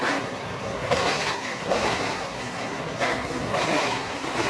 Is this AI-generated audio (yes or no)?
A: yes